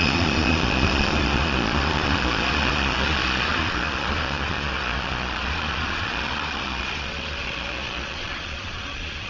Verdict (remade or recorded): remade